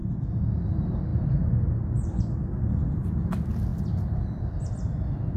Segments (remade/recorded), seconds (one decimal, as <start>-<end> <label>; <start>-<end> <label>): 0.0-0.6 remade; 0.6-5.4 recorded